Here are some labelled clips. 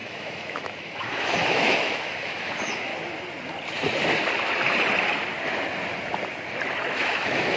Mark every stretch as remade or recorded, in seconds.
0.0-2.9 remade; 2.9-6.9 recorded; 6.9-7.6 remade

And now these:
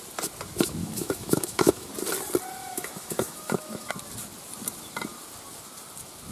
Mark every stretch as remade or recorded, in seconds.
0.0-0.8 recorded; 0.8-1.9 remade; 1.9-2.6 recorded; 2.6-3.9 remade; 3.9-6.3 recorded

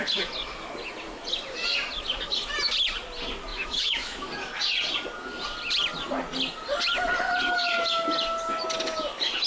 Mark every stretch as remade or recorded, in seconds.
0.0-3.5 recorded; 3.5-4.3 remade; 4.3-9.5 recorded

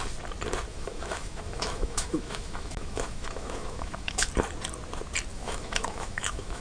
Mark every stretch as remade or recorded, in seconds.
0.0-0.7 recorded; 0.7-4.3 remade; 4.3-5.3 recorded; 5.3-6.6 remade